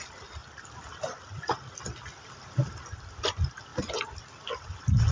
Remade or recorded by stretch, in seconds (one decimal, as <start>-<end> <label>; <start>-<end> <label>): 0.0-5.1 recorded